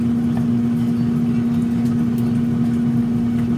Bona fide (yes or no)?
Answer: yes